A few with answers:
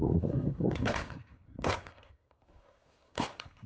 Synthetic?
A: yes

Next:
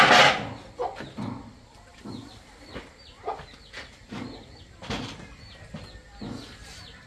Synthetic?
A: no